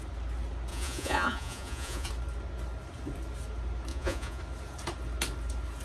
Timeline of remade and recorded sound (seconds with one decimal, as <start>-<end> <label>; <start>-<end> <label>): 0.0-0.7 recorded; 0.7-2.1 remade; 2.1-3.9 recorded; 3.9-4.4 remade; 4.4-5.8 recorded